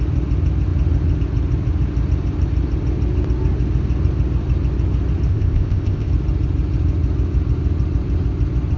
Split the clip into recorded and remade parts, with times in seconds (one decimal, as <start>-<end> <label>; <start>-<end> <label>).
0.0-5.3 recorded; 5.3-6.1 remade; 6.1-8.8 recorded